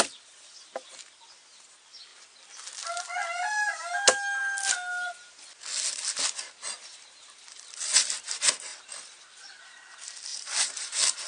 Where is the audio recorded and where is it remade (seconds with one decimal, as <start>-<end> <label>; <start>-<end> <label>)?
0.0-10.3 recorded; 10.3-11.3 remade